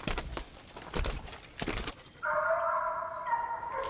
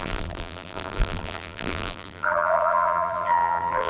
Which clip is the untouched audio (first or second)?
first